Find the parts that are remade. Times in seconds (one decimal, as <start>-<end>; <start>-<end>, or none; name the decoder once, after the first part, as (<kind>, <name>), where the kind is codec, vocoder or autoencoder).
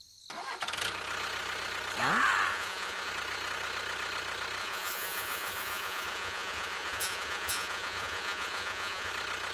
2.5-3.1 (vocoder, Vocos); 4.6-9.1